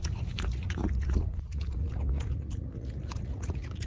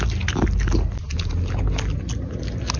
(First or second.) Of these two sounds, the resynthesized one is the first